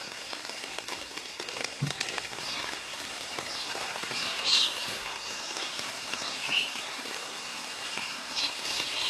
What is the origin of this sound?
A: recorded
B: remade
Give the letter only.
B